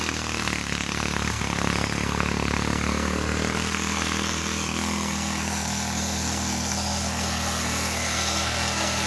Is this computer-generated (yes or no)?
yes